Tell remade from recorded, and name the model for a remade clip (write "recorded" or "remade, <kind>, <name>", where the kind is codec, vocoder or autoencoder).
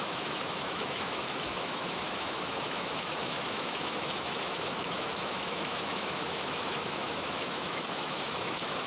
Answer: remade, autoencoder, DAC-VAE